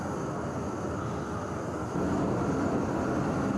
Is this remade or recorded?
recorded